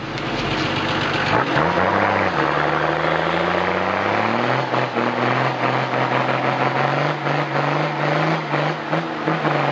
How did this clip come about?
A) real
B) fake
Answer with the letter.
A